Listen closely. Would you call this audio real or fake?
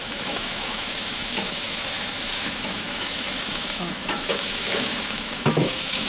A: fake